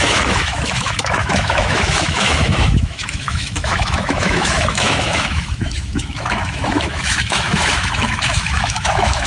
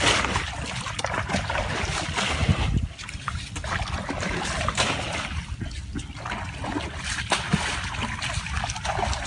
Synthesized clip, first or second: first